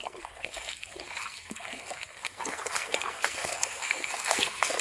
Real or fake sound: fake